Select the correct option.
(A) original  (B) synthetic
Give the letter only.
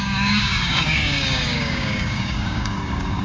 B